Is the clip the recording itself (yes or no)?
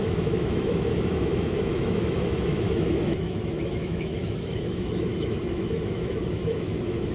no